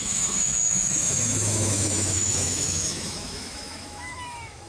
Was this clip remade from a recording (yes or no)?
yes